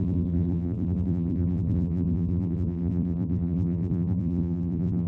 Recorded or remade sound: remade